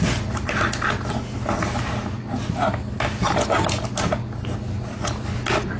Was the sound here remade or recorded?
recorded